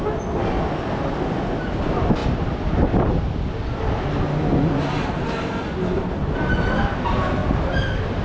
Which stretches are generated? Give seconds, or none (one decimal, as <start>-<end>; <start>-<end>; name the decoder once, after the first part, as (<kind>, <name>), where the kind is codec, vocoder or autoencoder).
none